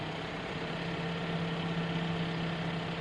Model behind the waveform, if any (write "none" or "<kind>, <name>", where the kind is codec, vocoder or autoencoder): none